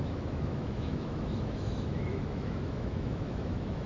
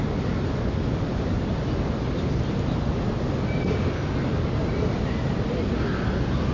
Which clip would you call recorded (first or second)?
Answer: second